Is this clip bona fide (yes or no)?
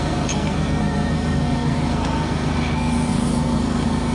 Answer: no